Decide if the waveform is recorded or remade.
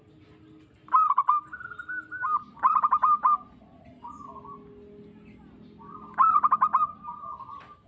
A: recorded